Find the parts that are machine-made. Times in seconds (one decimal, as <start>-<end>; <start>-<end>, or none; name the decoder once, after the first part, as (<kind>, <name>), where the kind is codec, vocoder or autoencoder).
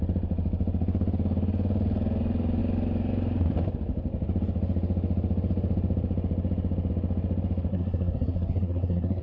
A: 7.7-9.2 (codec, SNAC)